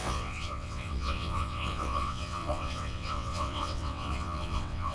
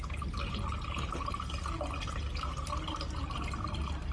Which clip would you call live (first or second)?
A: second